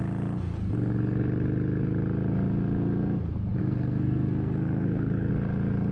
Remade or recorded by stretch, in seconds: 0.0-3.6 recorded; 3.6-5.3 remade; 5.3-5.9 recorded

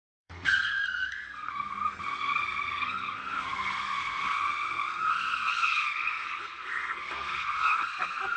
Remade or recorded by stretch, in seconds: 0.0-8.4 remade

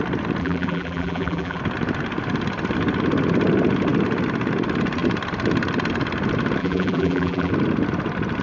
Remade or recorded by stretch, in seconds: 0.0-0.4 recorded; 0.4-1.6 remade; 1.6-6.6 recorded; 6.6-7.5 remade; 7.5-8.4 recorded

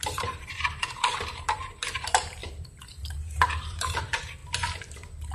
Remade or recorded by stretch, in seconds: 0.0-4.4 remade; 4.4-5.3 recorded

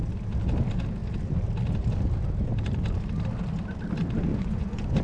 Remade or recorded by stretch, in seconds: 0.0-4.3 recorded; 4.3-5.0 remade

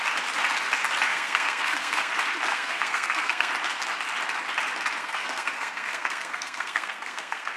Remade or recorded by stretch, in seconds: 0.0-1.1 recorded; 1.1-2.1 remade; 2.1-2.5 recorded; 2.5-3.5 remade; 3.5-5.0 recorded; 5.0-7.6 remade